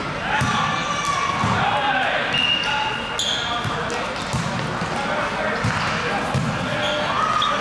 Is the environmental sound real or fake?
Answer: real